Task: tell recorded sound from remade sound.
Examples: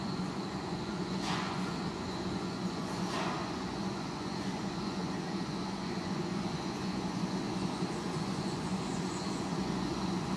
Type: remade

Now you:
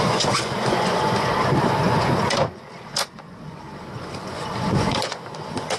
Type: remade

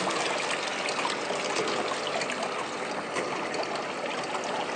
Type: recorded